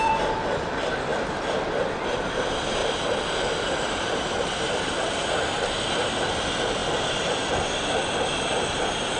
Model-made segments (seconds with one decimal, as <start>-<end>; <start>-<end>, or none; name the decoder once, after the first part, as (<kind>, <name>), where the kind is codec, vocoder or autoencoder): 2.8-5.1 (vocoder, BigVGAN v2)